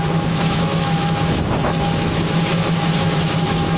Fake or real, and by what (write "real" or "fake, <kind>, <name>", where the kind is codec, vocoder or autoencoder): fake, autoencoder, DAC-VAE